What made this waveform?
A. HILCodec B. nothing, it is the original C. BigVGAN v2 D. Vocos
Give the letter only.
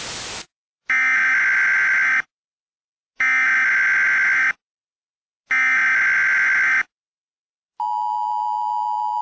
B